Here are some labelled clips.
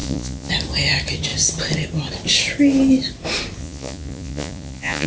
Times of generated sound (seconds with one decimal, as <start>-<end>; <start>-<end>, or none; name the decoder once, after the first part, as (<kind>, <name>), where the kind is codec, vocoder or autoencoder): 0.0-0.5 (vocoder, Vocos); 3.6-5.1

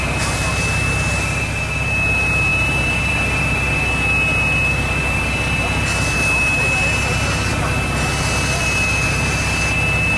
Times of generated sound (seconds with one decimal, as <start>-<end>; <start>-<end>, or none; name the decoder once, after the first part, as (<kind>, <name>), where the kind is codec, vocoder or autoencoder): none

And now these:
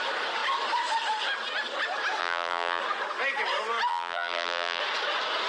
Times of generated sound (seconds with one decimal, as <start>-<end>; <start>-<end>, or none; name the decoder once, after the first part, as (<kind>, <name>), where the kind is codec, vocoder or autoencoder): 2.2-2.8 (vocoder, BigVGAN v2); 3.9-4.8

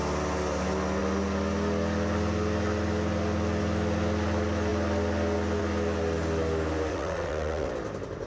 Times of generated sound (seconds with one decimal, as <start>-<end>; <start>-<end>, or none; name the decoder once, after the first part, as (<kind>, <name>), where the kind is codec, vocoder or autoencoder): 6.9-7.7 (vocoder, WaveNeXt)

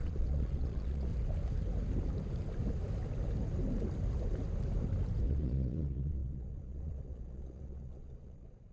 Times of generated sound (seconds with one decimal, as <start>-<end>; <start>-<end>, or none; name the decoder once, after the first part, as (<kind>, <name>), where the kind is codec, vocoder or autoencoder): 0.0-1.1 (vocoder, Vocos); 5.3-8.7

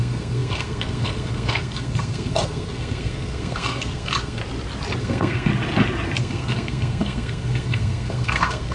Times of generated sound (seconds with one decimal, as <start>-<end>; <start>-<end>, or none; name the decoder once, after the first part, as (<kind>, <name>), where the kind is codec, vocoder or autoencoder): 0.0-4.4 (codec, SNAC); 5.0-5.5; 6.2-8.7